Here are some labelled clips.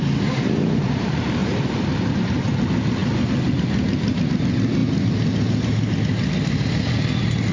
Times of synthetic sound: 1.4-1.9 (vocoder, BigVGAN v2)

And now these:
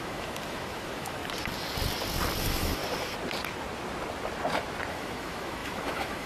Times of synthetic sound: 0.0-1.2 (autoencoder, DAC-VAE); 2.4-2.8; 4.9-6.3

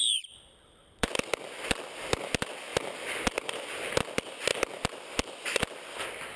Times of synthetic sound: 0.0-1.1 (vocoder, BigVGAN v2)

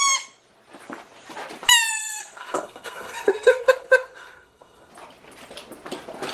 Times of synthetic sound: 2.0-4.9 (codec, SNAC)

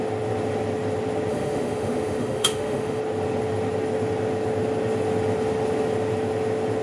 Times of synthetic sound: 1.3-3.0 (autoencoder, DAC-VAE)